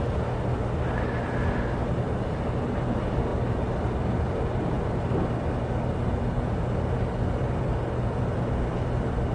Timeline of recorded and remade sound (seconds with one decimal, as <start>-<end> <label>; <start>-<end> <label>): 0.0-9.3 recorded

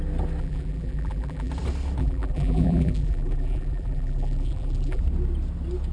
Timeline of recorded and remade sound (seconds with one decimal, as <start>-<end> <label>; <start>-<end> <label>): 0.0-0.4 recorded; 0.4-1.5 remade; 1.5-2.0 recorded; 2.0-5.0 remade; 5.0-5.9 recorded

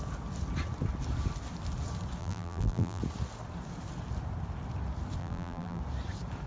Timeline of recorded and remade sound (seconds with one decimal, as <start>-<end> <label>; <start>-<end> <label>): 0.0-2.2 recorded; 2.2-3.0 remade; 3.0-5.2 recorded; 5.2-5.8 remade; 5.8-6.5 recorded

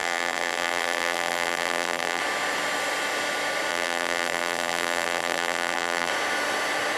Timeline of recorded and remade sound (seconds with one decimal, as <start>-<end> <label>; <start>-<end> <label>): 0.0-2.2 remade; 2.2-3.7 recorded; 3.7-6.1 remade; 6.1-7.0 recorded

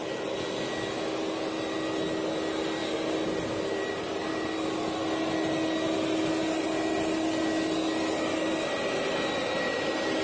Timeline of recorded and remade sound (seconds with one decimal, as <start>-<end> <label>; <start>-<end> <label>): 0.0-2.8 recorded; 2.8-3.7 remade; 3.7-10.2 recorded

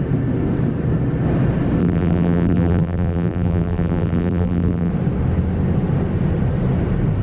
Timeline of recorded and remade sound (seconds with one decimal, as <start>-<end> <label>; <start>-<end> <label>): 0.0-1.8 recorded; 1.8-4.9 remade; 4.9-7.2 recorded

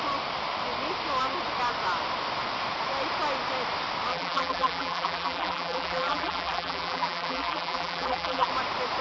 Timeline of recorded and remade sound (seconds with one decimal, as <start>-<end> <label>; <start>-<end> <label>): 0.0-4.1 recorded; 4.1-8.5 remade; 8.5-9.0 recorded